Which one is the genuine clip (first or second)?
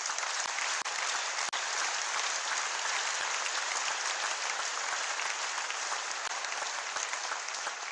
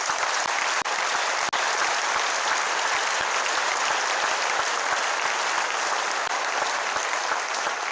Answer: second